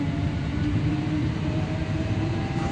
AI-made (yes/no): yes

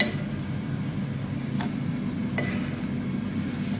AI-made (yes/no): no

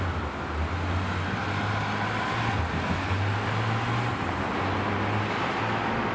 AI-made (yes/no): no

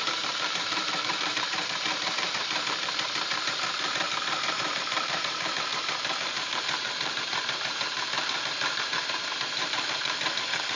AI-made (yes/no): yes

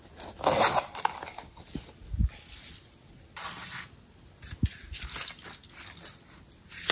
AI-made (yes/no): no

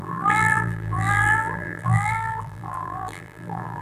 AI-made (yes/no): yes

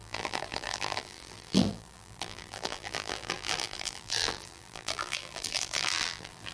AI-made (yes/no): yes